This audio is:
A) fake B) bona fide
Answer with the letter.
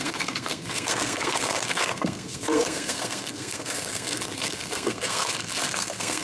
A